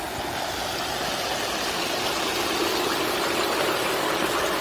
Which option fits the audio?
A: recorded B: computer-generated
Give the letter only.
A